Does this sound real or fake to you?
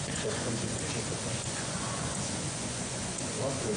fake